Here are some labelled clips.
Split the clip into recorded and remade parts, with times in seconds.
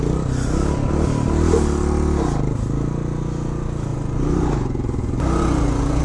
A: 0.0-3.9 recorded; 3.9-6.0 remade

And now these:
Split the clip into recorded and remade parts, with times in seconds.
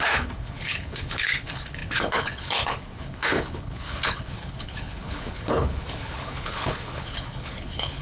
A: 0.0-8.0 remade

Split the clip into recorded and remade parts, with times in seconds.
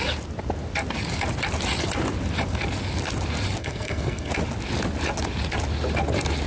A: 0.0-3.6 recorded; 3.6-4.3 remade; 4.3-6.5 recorded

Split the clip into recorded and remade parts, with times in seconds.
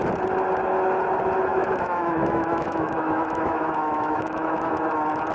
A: 0.0-1.5 recorded; 1.5-4.7 remade; 4.7-5.3 recorded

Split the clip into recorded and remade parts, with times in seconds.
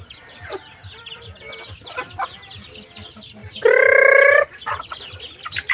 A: 0.0-5.7 recorded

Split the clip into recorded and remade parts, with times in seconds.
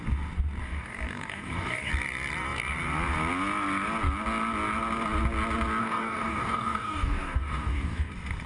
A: 0.0-0.6 recorded; 0.6-1.9 remade; 1.9-5.8 recorded; 5.8-8.1 remade; 8.1-8.5 recorded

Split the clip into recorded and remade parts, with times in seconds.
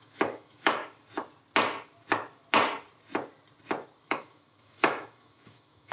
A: 0.0-0.8 remade; 0.8-4.0 recorded; 4.0-5.9 remade